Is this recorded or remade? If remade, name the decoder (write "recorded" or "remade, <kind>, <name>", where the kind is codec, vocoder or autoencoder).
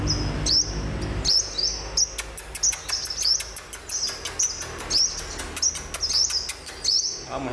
recorded